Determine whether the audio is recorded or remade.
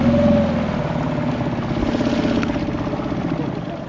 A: recorded